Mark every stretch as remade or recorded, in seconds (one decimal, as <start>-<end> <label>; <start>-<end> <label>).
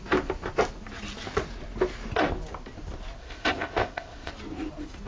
0.0-3.2 recorded; 3.2-4.3 remade; 4.3-5.1 recorded